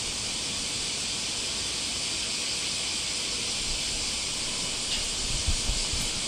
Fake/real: real